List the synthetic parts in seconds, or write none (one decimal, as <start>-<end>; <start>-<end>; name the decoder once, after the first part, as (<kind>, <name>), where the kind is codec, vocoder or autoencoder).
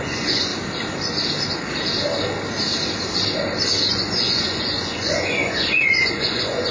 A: 0.0-0.5 (vocoder, Vocos); 3.9-6.7